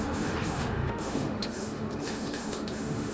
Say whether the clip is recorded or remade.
remade